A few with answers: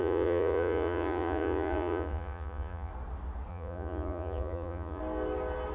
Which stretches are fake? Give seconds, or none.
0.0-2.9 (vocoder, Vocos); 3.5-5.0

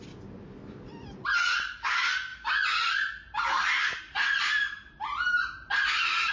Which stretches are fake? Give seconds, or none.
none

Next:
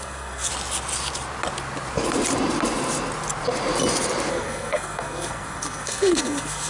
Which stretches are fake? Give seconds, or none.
0.0-0.5 (codec, SNAC); 4.3-6.7